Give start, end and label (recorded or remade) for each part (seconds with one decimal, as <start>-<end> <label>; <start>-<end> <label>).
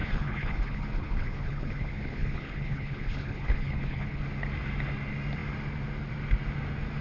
0.0-4.2 remade; 4.2-7.0 recorded